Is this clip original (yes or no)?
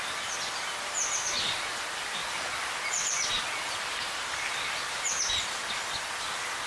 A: yes